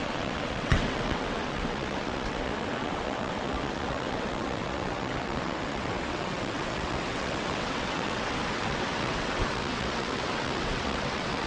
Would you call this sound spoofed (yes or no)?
yes